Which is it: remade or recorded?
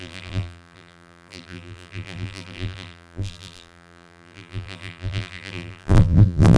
remade